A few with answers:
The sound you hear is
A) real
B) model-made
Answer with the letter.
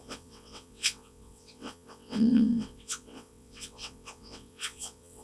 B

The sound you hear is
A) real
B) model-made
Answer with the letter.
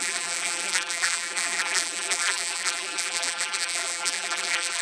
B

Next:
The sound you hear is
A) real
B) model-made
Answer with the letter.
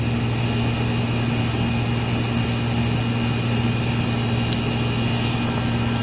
A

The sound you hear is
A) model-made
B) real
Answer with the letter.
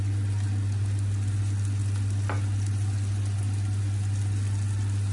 B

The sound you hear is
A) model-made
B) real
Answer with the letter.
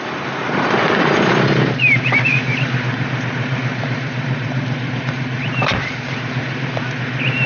A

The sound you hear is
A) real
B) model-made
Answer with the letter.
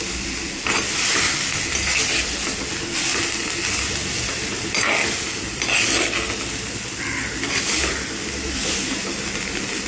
A